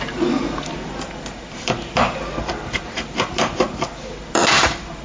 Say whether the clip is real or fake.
real